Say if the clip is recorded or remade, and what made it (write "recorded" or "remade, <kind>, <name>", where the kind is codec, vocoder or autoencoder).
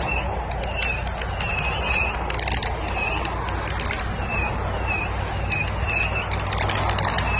recorded